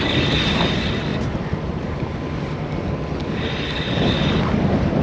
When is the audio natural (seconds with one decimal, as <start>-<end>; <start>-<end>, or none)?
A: 0.0-5.0